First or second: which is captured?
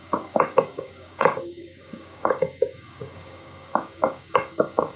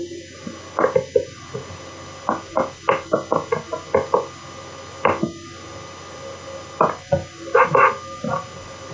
second